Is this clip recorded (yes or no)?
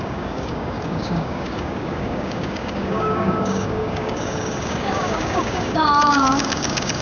no